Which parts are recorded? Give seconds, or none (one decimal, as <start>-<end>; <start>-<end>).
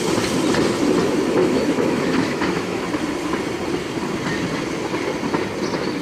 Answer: 0.0-1.4; 2.8-6.0